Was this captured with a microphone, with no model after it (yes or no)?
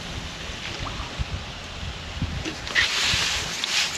yes